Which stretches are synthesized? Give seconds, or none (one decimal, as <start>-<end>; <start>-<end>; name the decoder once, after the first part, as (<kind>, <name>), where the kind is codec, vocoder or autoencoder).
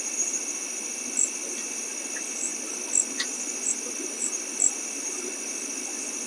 none